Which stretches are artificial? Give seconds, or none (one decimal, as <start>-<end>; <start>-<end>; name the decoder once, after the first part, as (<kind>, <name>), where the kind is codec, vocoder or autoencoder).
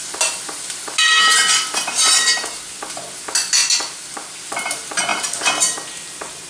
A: none